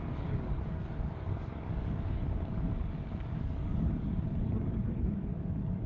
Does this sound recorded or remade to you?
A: remade